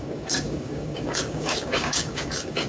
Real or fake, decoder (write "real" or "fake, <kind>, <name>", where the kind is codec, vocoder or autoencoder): fake, codec, DAC